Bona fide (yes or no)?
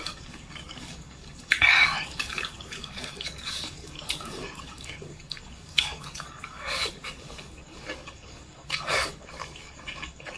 no